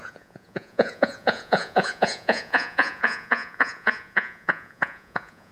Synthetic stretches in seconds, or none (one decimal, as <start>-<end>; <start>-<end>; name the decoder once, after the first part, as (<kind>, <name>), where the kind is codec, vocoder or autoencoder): 0.0-5.5 (vocoder, Vocos)

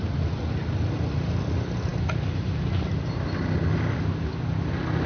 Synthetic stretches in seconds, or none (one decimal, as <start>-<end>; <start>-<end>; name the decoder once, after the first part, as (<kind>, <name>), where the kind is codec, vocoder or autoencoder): none

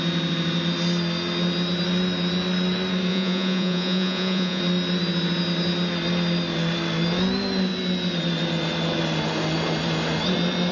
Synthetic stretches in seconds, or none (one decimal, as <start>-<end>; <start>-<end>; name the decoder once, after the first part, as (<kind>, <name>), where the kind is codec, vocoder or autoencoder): 3.1-4.6 (vocoder, Vocos)

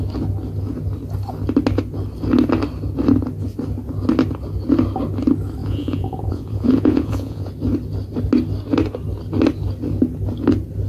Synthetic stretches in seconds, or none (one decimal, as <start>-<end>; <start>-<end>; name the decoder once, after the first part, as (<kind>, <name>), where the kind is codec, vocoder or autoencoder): 5.6-7.5 (vocoder, Vocos)

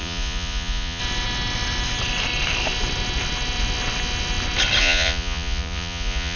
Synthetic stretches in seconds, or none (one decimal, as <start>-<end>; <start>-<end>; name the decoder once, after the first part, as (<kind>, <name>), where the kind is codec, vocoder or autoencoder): 0.0-1.0 (vocoder, Vocos); 4.8-6.4

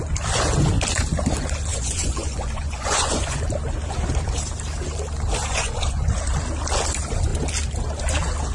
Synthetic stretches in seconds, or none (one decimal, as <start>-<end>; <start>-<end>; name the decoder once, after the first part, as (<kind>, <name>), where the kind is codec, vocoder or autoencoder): 1.7-3.4 (vocoder, Vocos); 5.5-6.1

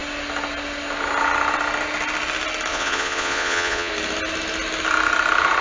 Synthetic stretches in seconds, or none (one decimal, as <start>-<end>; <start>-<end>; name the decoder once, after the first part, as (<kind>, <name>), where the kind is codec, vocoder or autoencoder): 2.7-3.9 (vocoder, Vocos)